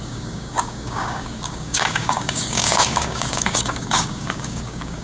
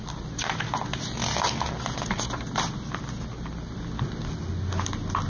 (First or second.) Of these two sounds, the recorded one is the second